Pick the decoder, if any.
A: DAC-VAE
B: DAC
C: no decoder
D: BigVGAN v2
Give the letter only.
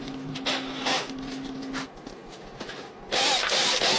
C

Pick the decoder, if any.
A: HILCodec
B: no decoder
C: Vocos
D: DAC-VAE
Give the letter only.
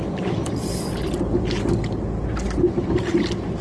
B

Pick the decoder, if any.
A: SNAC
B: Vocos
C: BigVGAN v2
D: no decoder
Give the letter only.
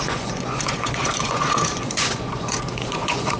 B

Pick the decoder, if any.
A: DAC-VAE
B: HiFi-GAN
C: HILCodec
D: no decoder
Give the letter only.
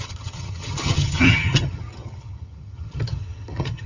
B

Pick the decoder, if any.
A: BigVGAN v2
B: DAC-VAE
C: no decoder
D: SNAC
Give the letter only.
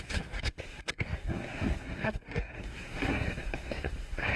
D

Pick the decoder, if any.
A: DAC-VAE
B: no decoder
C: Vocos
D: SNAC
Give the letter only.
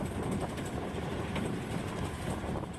B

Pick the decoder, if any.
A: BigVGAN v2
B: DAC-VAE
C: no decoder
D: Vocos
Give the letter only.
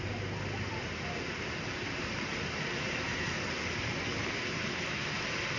C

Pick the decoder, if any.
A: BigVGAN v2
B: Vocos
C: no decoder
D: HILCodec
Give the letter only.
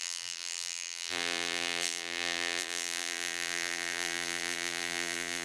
A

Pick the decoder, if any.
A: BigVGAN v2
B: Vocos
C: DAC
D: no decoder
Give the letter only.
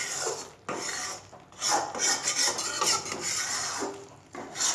D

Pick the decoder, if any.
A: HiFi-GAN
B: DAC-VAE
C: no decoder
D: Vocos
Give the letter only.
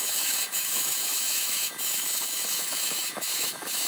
B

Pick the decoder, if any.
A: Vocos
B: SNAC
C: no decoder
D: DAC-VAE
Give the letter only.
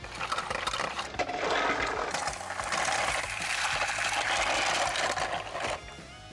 C